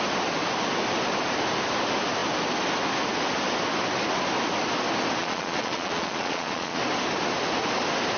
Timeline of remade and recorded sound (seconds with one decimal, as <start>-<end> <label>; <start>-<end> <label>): 0.0-5.2 recorded; 5.2-6.8 remade; 6.8-8.2 recorded